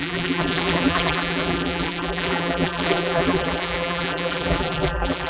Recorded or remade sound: remade